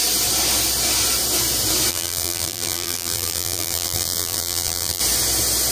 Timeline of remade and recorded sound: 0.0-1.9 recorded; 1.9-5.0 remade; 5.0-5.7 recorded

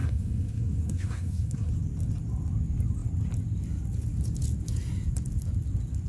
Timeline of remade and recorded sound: 0.0-1.7 remade; 1.7-6.1 recorded